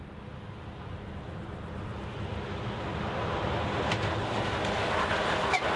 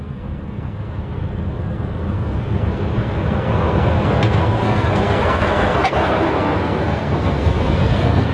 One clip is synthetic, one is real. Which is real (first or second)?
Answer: first